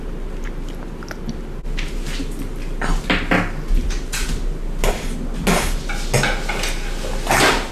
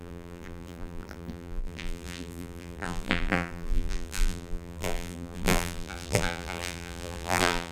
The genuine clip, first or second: first